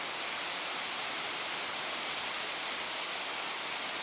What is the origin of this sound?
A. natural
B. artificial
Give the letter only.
A